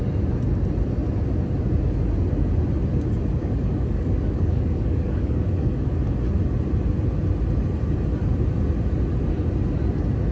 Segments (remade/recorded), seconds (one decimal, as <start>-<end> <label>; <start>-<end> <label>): 0.0-3.4 recorded; 3.4-5.9 remade; 5.9-10.3 recorded